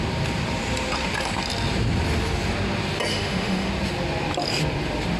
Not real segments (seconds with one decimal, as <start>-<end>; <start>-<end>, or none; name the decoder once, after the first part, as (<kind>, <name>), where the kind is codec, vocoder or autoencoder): 3.1-3.7 (autoencoder, DAC-VAE)